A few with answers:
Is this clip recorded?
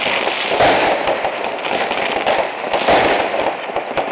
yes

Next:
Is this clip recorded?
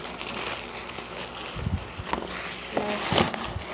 yes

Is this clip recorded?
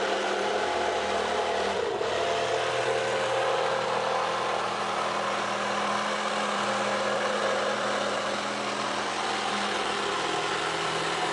yes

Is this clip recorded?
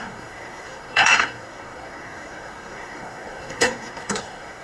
no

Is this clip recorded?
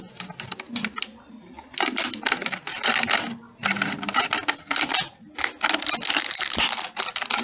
yes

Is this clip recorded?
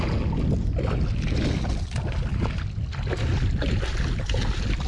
yes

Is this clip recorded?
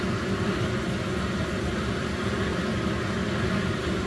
yes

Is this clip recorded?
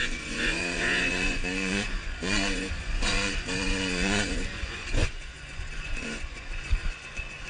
no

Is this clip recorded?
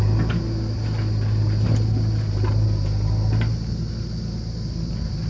yes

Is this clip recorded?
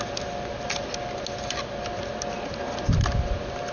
yes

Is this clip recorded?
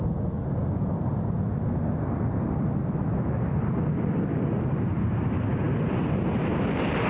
yes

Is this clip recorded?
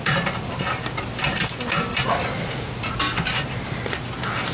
yes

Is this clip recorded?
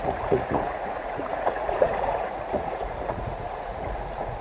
no